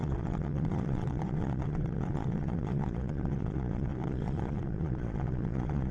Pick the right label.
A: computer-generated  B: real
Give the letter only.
A